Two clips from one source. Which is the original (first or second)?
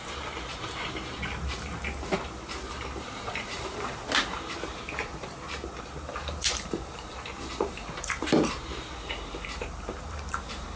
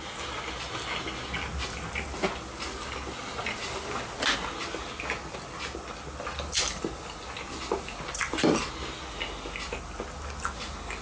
second